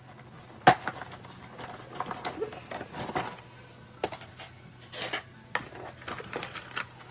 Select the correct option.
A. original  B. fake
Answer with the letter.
A